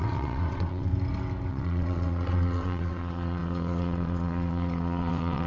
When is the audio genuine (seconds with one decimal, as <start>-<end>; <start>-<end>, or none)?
0.9-1.5